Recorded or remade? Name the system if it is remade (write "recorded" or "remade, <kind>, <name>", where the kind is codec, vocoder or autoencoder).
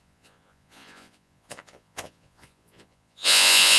remade, vocoder, Vocos